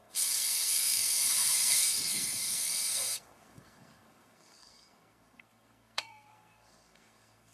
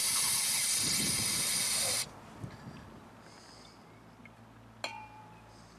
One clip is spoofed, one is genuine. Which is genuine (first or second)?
second